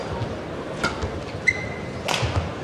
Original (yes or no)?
yes